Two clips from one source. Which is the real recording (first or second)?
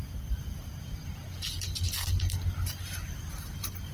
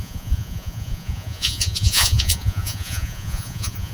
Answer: first